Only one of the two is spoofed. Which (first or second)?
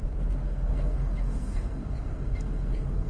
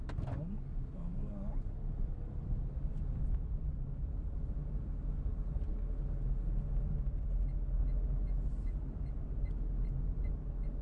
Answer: first